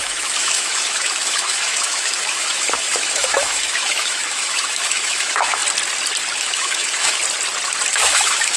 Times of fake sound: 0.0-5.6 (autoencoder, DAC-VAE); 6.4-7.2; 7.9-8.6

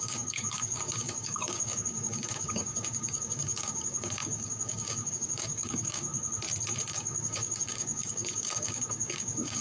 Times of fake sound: 0.0-6.1 (codec, DAC); 6.9-9.6

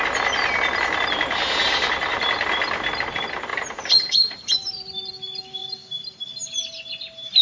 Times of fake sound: 3.5-5.1 (vocoder, BigVGAN v2)

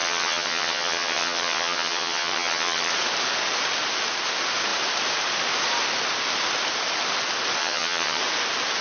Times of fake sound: 0.0-2.9 (vocoder, HiFi-GAN); 7.6-8.2

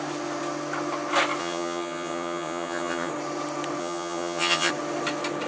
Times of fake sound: 1.4-3.1 (vocoder, HiFi-GAN); 3.8-4.7

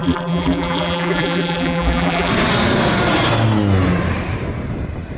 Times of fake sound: 0.0-2.3 (vocoder, BigVGAN v2)